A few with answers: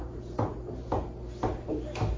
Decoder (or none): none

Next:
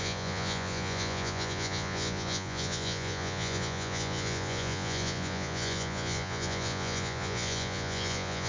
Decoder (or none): vocoder, Vocos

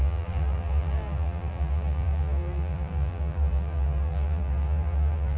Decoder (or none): vocoder, BigVGAN v2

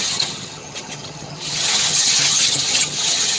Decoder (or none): vocoder, HiFi-GAN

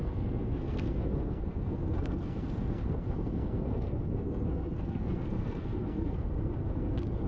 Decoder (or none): codec, SNAC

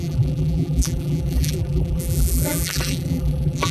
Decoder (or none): vocoder, BigVGAN v2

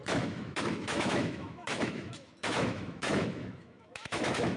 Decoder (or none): autoencoder, DAC-VAE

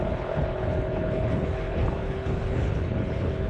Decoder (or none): codec, HILCodec